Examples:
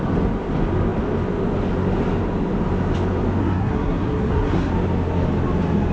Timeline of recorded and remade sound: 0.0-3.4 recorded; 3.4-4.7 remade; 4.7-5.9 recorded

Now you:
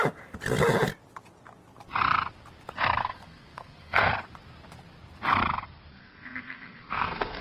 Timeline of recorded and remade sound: 0.0-3.0 recorded; 3.0-4.1 remade; 4.1-5.9 recorded; 5.9-7.4 remade

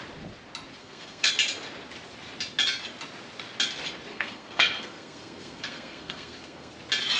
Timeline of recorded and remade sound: 0.0-0.8 recorded; 0.8-1.3 remade; 1.3-4.1 recorded; 4.1-6.7 remade; 6.7-7.2 recorded

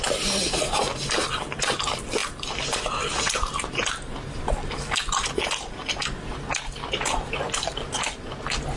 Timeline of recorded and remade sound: 0.0-8.8 recorded

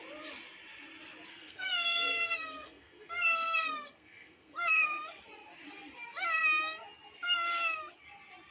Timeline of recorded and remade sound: 0.0-1.3 recorded; 1.3-5.0 remade; 5.0-8.5 recorded

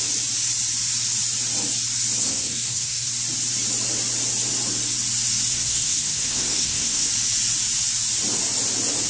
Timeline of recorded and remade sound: 0.0-2.2 recorded; 2.2-3.1 remade; 3.1-5.5 recorded; 5.5-7.1 remade; 7.1-9.1 recorded

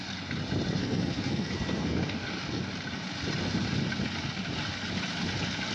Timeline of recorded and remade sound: 0.0-0.8 recorded; 0.8-2.6 remade; 2.6-5.7 recorded

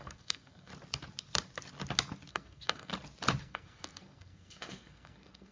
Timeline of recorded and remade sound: 0.0-0.7 remade; 0.7-2.3 recorded; 2.3-2.9 remade; 2.9-3.4 recorded; 3.4-5.5 remade